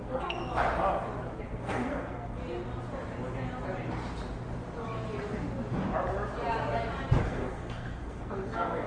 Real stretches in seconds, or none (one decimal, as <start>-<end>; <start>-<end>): 0.4-1.4; 2.4-7.2